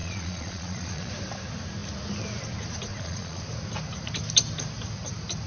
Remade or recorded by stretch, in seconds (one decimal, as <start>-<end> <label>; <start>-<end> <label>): 0.0-1.1 remade; 1.1-2.9 recorded; 2.9-3.4 remade; 3.4-5.5 recorded